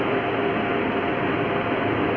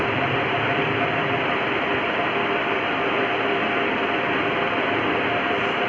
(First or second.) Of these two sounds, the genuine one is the first